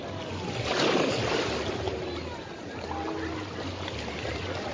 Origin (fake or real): real